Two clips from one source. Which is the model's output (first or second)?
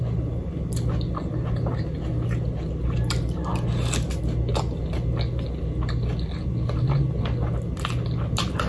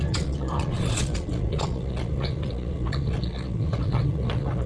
second